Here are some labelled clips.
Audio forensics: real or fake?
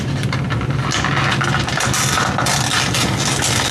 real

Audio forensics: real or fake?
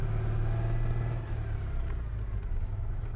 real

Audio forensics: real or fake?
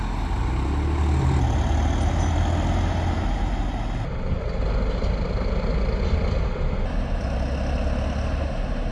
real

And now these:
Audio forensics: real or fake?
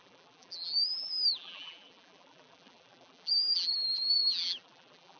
fake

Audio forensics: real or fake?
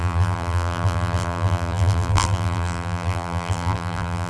fake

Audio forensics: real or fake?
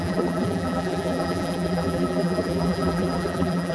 fake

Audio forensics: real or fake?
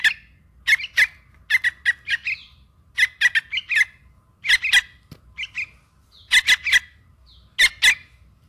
real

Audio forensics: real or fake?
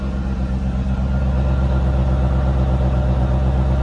real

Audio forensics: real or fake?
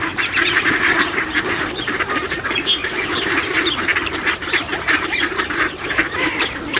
fake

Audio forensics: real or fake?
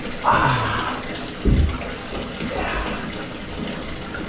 real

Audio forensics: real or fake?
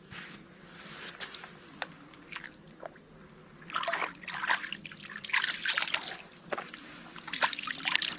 real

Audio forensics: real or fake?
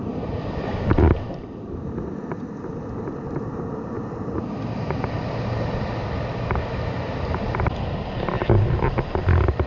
real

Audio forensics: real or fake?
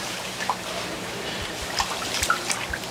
fake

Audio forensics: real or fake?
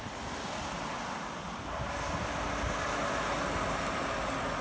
real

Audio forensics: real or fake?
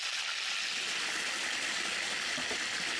real